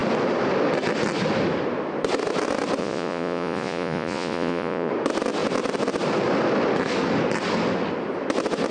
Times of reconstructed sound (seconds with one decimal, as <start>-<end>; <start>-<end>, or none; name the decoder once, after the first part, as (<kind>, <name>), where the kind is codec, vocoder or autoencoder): 2.8-4.9 (vocoder, Vocos)